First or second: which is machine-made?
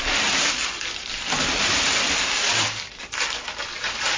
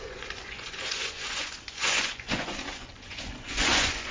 second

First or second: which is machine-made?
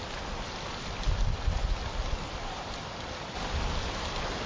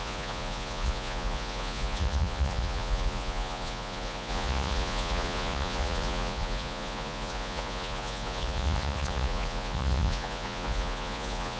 second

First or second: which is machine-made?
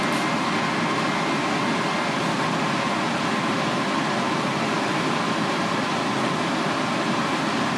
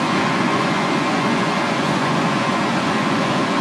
second